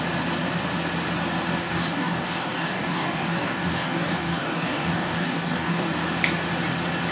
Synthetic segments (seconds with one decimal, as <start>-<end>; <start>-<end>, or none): 1.6-5.9